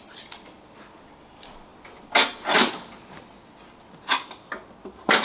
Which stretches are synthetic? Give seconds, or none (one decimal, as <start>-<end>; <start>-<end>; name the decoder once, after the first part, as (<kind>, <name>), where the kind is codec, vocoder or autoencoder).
none